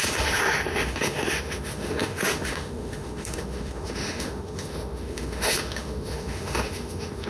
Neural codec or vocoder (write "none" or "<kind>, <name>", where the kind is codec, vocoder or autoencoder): autoencoder, DAC-VAE